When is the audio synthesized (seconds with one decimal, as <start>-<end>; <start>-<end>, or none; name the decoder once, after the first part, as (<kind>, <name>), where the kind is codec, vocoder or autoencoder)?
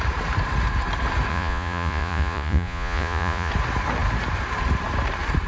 1.3-3.5 (vocoder, Vocos)